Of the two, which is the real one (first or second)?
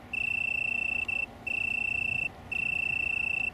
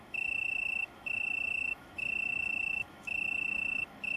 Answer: first